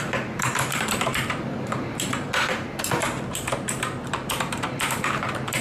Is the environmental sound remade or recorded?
remade